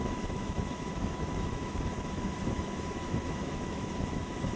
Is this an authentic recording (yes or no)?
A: no